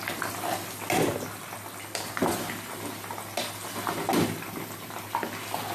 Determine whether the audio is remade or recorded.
recorded